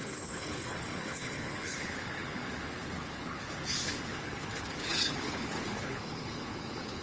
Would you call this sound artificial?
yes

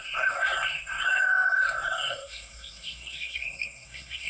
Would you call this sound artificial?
yes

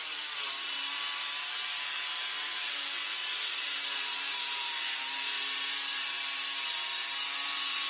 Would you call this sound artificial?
yes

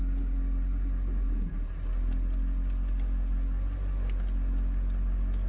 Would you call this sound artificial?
no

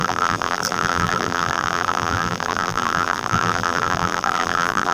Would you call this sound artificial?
yes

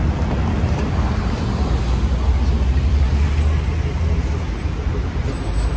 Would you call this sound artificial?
no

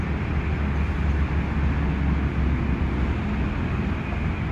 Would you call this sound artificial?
no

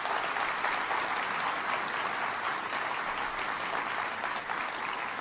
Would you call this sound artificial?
no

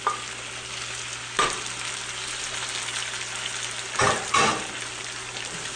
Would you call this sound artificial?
no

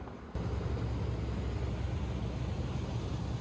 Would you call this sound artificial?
no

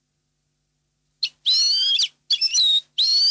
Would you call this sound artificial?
no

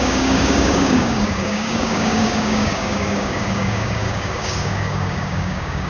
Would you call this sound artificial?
yes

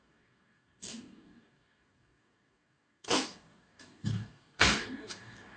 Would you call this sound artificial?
yes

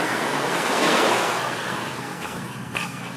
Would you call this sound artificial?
yes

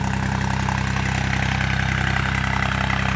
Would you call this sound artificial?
no